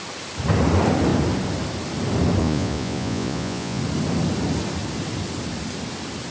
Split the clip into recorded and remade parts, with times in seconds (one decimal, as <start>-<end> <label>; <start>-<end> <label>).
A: 0.0-2.4 recorded; 2.4-3.8 remade; 3.8-6.3 recorded